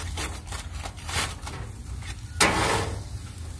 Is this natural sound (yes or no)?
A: yes